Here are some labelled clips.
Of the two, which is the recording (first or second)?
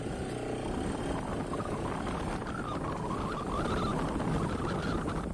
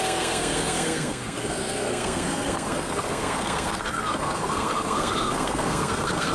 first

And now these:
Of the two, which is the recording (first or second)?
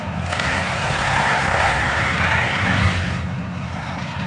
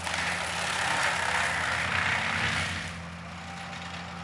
second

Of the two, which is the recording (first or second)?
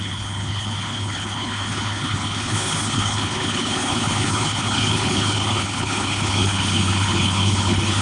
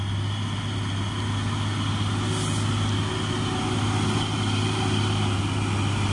second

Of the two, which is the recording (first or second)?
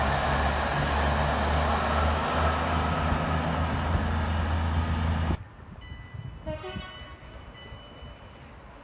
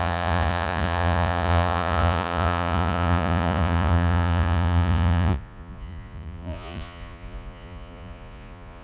first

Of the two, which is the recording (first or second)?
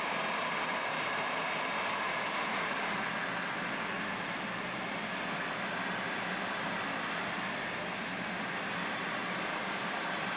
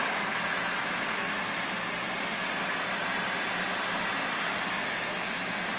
second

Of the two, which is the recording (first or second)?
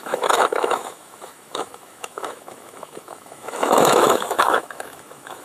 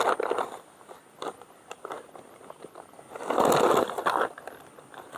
second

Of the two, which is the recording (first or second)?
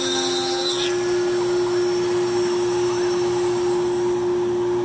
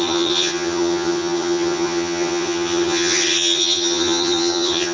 first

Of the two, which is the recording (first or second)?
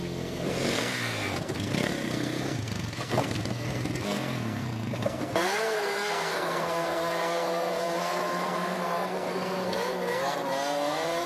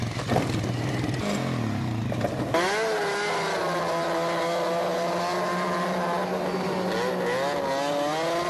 second